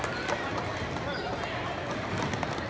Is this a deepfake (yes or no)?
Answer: no